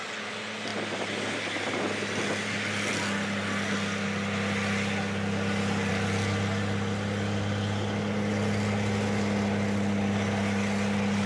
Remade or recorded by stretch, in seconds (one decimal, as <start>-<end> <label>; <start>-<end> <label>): 0.0-11.3 recorded